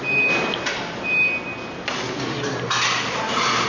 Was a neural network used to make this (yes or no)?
no